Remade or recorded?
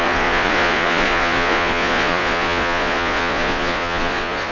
remade